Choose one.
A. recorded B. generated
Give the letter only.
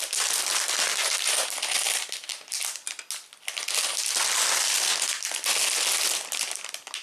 A